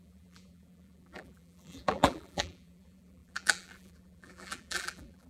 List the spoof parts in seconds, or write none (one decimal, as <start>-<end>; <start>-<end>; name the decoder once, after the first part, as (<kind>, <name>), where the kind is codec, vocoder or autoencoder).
0.0-5.3 (vocoder, BigVGAN v2)